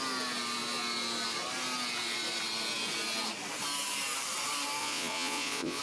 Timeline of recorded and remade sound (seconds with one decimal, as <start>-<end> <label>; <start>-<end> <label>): 0.0-4.8 recorded; 4.8-5.8 remade